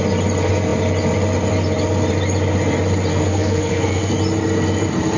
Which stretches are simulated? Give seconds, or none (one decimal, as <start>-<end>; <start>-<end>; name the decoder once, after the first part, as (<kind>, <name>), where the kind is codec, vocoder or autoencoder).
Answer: 3.1-4.1 (codec, SNAC)